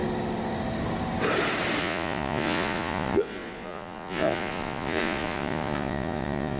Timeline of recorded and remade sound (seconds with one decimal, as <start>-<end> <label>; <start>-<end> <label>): 0.0-1.8 recorded; 1.8-6.6 remade